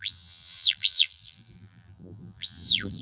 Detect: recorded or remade remade